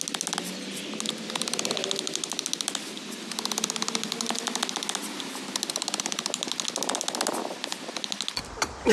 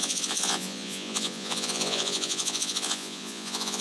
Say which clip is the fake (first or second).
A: second